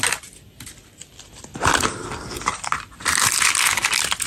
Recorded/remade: recorded